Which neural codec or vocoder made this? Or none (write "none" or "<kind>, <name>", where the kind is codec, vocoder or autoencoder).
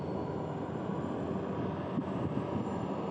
none